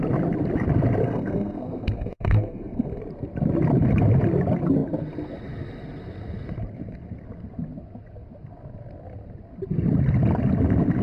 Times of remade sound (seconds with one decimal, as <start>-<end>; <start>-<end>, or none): 1.0-3.0